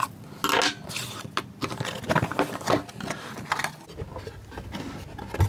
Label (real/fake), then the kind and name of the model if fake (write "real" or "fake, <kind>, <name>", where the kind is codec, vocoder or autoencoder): real